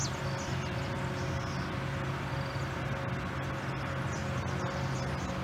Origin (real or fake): real